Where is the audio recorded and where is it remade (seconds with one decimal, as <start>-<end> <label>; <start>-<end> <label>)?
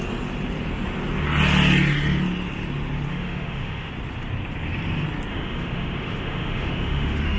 0.0-3.1 recorded; 3.1-3.9 remade; 3.9-5.3 recorded; 5.3-7.4 remade